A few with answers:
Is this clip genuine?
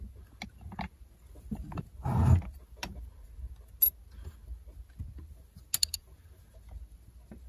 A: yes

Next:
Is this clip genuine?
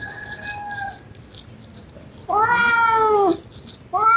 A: yes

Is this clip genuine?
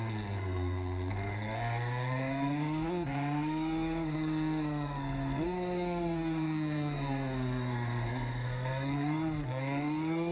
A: no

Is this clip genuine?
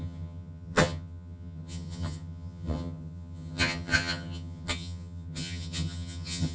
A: no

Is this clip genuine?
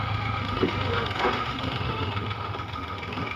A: no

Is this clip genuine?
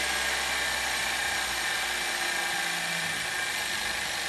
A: yes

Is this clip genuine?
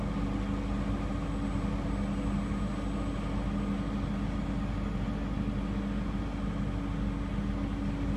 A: yes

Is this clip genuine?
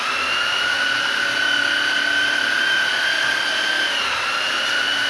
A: yes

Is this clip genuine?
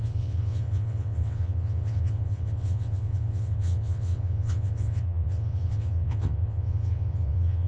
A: no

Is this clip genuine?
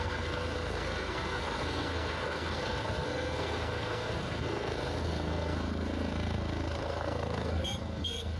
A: no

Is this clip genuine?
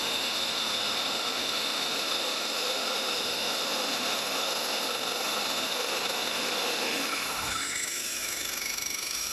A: no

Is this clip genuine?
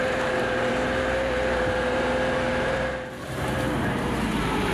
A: no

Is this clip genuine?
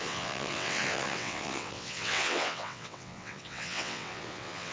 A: no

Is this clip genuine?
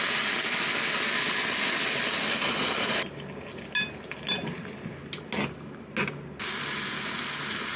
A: yes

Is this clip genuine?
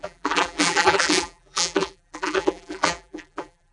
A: no